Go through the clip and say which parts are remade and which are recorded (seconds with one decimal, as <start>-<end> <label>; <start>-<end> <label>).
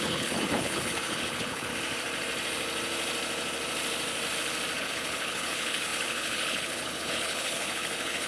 0.0-1.7 remade; 1.7-4.8 recorded; 4.8-8.3 remade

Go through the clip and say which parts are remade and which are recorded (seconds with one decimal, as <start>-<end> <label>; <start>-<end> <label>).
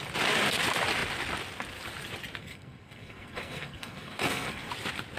0.0-2.4 recorded; 2.4-4.7 remade; 4.7-5.2 recorded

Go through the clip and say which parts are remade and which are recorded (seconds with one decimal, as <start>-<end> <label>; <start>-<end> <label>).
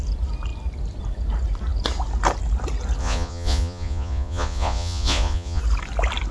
0.0-3.0 recorded; 3.0-5.6 remade; 5.6-6.3 recorded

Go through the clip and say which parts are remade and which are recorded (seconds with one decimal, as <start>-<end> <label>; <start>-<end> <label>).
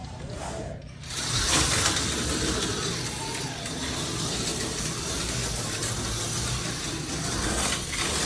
0.0-1.8 remade; 1.8-4.5 recorded; 4.5-5.2 remade; 5.2-8.3 recorded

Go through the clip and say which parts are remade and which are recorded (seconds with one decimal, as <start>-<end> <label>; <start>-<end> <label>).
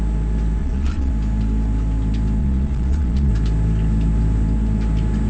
0.0-0.6 recorded; 0.6-1.1 remade; 1.1-2.4 recorded; 2.4-3.3 remade; 3.3-5.3 recorded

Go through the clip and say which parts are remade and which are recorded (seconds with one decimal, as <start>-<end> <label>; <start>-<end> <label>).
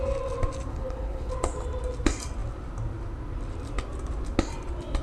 0.0-0.7 recorded; 0.7-1.3 remade; 1.3-5.0 recorded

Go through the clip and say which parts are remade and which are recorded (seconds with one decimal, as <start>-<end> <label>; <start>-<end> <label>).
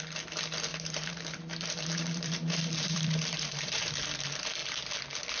0.0-0.7 recorded; 0.7-3.9 remade; 3.9-5.4 recorded